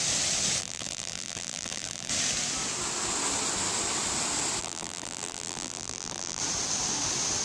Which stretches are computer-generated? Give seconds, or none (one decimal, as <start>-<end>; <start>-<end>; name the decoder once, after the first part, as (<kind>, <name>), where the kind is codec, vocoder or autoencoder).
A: 0.6-2.1 (vocoder, BigVGAN v2); 4.6-6.4